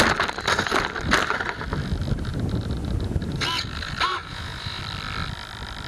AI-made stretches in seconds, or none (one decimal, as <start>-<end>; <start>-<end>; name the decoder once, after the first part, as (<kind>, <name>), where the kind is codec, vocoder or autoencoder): 4.2-4.8 (vocoder, Vocos)